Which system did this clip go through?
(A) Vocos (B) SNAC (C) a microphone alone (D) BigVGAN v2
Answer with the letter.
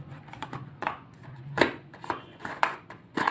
A